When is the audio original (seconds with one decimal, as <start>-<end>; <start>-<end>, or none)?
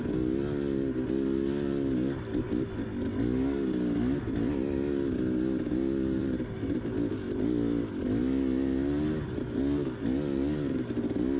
0.0-6.2; 7.1-11.4